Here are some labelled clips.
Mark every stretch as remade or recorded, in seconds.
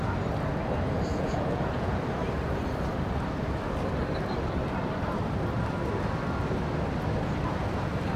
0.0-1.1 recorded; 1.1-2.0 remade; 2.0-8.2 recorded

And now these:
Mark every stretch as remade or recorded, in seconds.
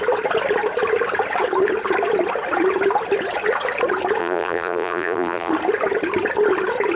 0.0-4.2 recorded; 4.2-5.5 remade; 5.5-7.0 recorded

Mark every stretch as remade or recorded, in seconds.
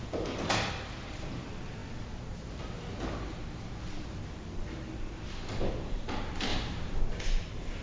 0.0-7.8 recorded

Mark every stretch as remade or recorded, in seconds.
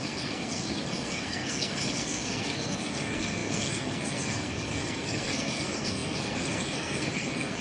0.0-7.6 remade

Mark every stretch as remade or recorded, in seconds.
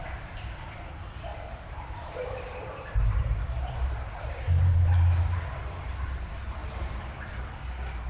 0.0-1.3 recorded; 1.3-4.3 remade; 4.3-8.1 recorded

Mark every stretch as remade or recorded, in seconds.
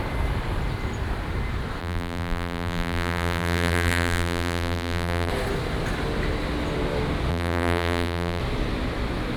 0.0-1.8 recorded; 1.8-5.3 remade; 5.3-7.3 recorded; 7.3-8.4 remade; 8.4-9.4 recorded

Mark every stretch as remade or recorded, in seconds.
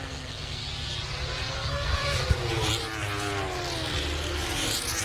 0.0-0.6 remade; 0.6-1.5 recorded; 1.5-2.0 remade; 2.0-5.0 recorded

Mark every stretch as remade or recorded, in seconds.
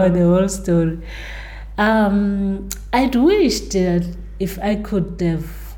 0.0-5.8 recorded